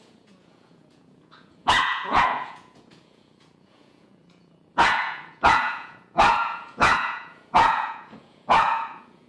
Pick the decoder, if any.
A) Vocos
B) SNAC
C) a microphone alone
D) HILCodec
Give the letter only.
A